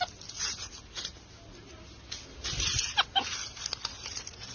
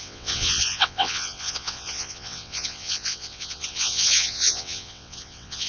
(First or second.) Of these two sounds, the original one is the first